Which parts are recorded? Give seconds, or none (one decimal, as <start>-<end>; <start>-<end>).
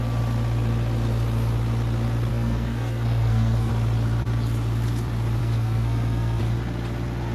0.0-2.3; 3.7-5.4; 6.4-7.3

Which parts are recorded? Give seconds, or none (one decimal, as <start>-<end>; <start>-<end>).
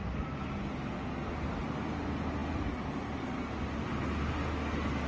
0.0-5.1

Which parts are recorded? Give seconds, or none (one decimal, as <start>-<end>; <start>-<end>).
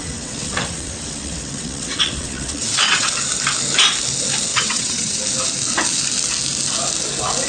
3.1-4.5; 5.2-7.5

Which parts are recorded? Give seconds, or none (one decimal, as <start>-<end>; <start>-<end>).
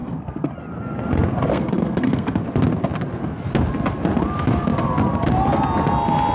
0.5-1.5; 2.4-6.3